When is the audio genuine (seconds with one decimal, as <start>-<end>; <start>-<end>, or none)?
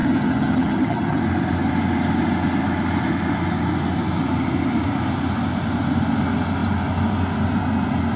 1.2-8.2